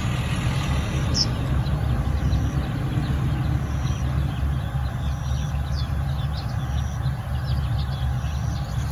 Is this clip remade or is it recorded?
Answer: recorded